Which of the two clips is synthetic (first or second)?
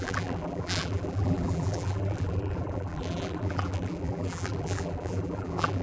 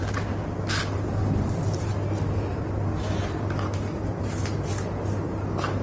first